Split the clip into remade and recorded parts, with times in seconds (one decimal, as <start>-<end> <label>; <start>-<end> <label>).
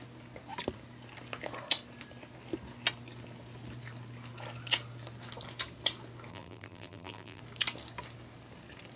0.0-6.3 recorded; 6.3-7.4 remade; 7.4-9.0 recorded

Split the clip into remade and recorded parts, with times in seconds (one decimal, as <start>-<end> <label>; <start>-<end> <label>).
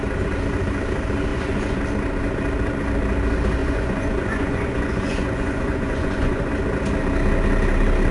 0.0-1.3 recorded; 1.3-1.8 remade; 1.8-3.6 recorded; 3.6-6.5 remade; 6.5-8.1 recorded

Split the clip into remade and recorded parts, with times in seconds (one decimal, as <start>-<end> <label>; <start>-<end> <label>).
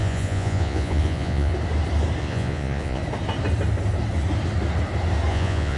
0.0-1.5 remade; 1.5-2.2 recorded; 2.2-3.0 remade; 3.0-5.3 recorded; 5.3-5.8 remade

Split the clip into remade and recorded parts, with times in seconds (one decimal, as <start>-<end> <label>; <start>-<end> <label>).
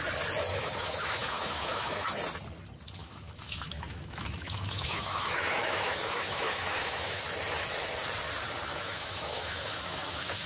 0.0-0.5 recorded; 0.5-2.2 remade; 2.2-3.0 recorded; 3.0-7.2 remade; 7.2-8.7 recorded; 8.7-10.5 remade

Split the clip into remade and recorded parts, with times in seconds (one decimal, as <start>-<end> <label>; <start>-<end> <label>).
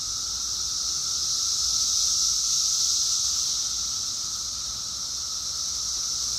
0.0-6.4 recorded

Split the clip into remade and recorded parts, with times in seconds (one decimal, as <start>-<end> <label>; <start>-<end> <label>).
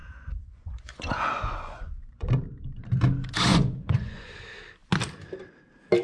0.0-2.3 remade; 2.3-3.5 recorded; 3.5-4.3 remade; 4.3-6.0 recorded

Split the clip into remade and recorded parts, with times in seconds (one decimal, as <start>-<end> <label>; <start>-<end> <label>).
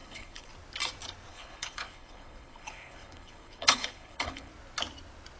0.0-0.5 remade; 0.5-1.3 recorded; 1.3-4.5 remade; 4.5-5.4 recorded